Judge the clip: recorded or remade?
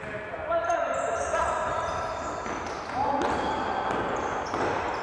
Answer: recorded